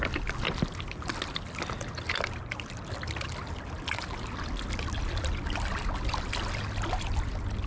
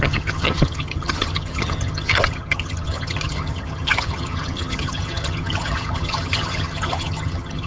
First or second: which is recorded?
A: first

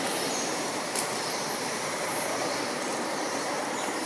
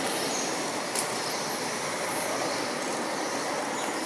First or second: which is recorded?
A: second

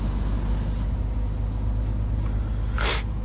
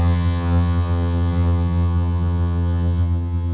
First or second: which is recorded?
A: first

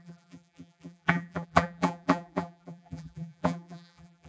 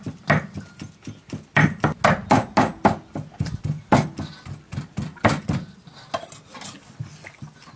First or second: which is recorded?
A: second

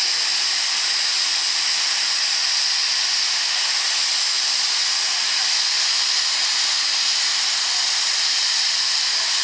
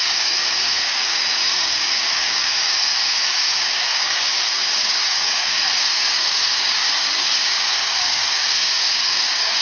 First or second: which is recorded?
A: first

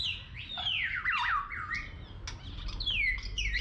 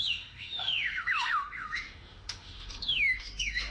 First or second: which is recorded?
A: first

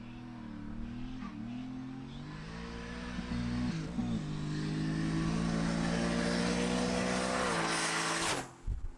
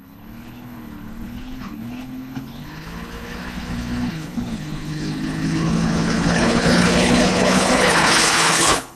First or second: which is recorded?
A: first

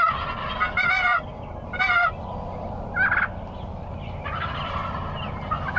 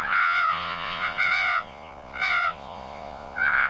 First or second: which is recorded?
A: first